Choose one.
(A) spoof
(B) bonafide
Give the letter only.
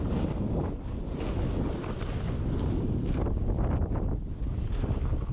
B